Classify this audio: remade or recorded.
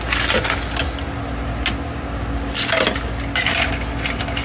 recorded